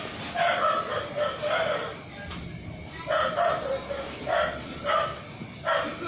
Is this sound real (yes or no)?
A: yes